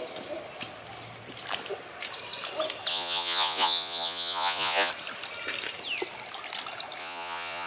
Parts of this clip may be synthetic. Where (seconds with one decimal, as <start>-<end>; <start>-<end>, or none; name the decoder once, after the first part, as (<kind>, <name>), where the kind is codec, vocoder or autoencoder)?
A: 2.9-4.9 (vocoder, Vocos); 7.0-7.7